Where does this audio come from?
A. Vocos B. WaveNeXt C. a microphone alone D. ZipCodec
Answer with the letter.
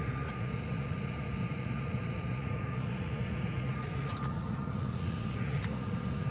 A